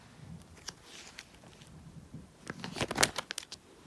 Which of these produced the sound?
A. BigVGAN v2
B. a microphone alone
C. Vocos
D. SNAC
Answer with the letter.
B